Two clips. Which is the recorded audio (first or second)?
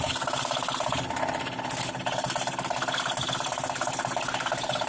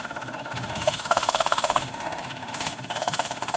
first